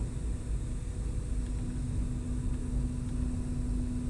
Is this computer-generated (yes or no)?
no